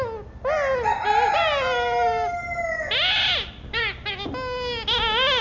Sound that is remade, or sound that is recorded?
recorded